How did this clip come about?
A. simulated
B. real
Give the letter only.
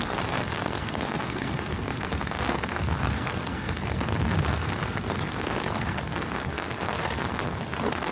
A